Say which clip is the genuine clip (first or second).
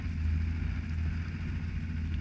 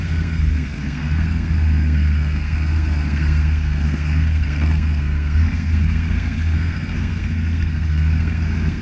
first